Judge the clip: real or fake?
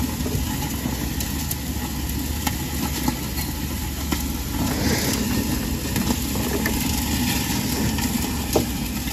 real